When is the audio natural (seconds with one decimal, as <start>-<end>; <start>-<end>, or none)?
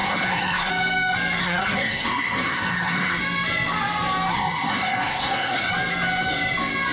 0.7-1.4; 3.2-4.3; 5.7-6.9